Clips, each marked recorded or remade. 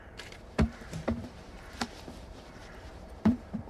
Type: remade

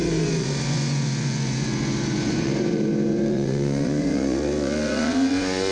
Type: remade